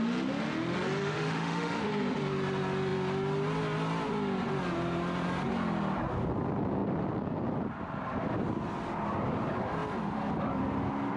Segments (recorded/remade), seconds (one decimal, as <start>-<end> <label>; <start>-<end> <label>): 0.0-1.0 recorded; 1.0-1.9 remade; 1.9-11.2 recorded